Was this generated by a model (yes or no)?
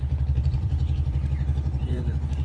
yes